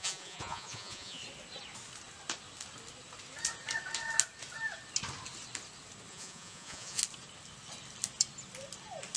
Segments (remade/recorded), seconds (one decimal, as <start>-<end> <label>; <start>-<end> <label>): 0.0-1.2 remade; 1.2-6.1 recorded; 6.1-7.0 remade; 7.0-9.2 recorded